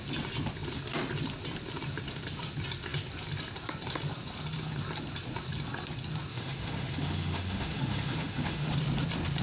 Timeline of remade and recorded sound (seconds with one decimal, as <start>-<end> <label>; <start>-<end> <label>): 0.0-6.3 recorded; 6.3-8.7 remade; 8.7-9.4 recorded